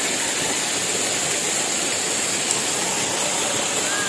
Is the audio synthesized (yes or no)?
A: no